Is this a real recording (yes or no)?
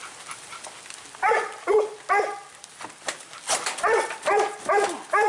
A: yes